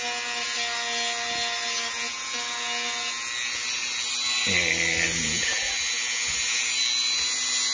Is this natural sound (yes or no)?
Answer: yes